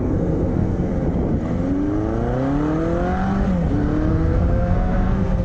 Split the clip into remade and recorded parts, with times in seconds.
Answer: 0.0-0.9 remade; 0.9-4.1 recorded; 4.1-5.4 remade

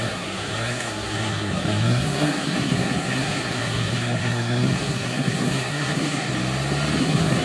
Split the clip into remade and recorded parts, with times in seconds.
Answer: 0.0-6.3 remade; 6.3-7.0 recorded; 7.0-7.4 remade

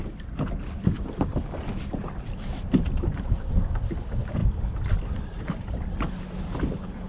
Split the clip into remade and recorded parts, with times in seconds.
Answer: 0.0-0.6 recorded; 0.6-3.0 remade; 3.0-4.4 recorded; 4.4-6.1 remade; 6.1-7.1 recorded

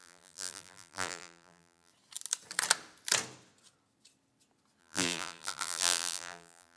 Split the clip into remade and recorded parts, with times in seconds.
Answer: 0.0-1.9 remade; 1.9-4.8 recorded; 4.8-6.8 remade

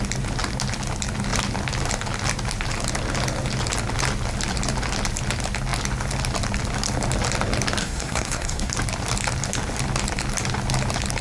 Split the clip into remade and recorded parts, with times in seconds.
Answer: 0.0-7.8 recorded; 7.8-8.7 remade; 8.7-11.2 recorded

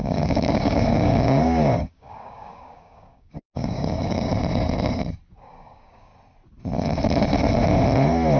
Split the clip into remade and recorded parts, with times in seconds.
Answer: 0.0-4.3 remade; 4.3-5.4 recorded; 5.4-6.1 remade; 6.1-8.4 recorded